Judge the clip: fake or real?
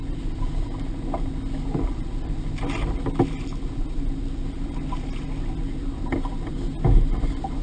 real